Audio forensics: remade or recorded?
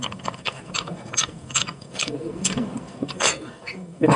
remade